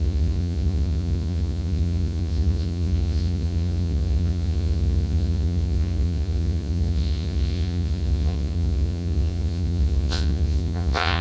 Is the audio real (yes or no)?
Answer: no